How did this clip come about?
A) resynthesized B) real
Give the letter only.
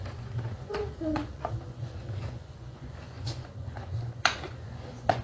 A